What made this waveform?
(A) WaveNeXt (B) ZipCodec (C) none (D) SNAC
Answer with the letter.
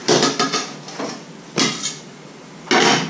C